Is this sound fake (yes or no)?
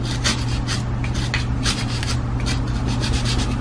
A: no